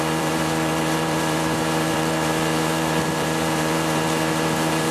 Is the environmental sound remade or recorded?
remade